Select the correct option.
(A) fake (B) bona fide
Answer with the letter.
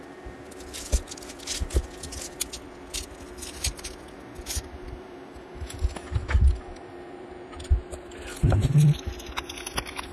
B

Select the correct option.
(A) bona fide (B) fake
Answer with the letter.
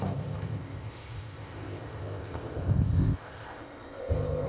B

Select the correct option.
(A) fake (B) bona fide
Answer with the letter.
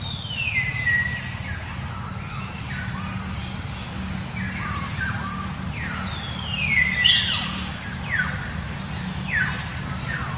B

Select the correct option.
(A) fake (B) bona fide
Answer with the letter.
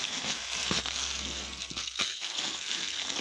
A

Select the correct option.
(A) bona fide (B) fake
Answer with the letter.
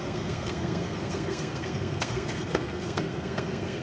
B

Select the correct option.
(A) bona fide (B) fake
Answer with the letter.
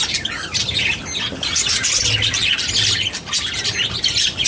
A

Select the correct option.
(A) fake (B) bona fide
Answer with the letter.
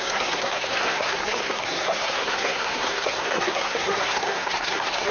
A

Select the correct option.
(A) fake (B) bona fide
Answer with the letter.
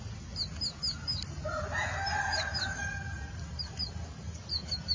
B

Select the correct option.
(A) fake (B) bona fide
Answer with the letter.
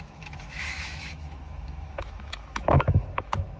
A